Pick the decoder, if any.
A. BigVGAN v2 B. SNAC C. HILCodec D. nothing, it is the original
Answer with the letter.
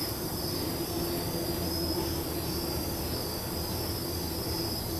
D